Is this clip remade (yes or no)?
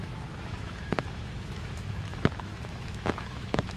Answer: yes